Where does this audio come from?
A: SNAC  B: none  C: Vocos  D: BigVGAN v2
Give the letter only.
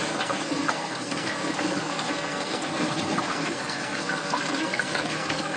A